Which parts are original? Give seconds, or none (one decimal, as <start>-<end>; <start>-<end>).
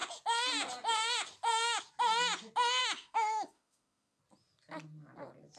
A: 0.0-2.8; 4.2-5.6